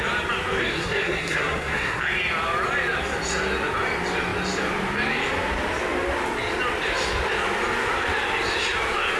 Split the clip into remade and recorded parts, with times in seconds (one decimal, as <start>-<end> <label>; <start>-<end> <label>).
0.0-0.6 recorded; 0.6-2.0 remade; 2.0-9.2 recorded